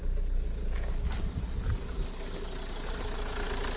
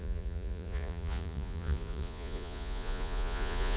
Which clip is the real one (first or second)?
first